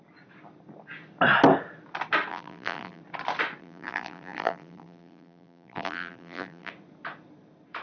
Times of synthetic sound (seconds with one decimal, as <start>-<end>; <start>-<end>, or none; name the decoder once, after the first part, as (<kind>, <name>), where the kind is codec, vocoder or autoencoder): 2.3-3.0 (vocoder, BigVGAN v2); 3.6-6.7